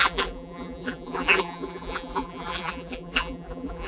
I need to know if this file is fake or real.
fake